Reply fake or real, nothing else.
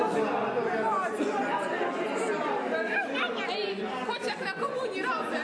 real